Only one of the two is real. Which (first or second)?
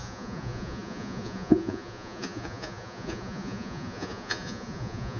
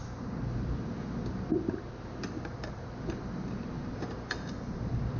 second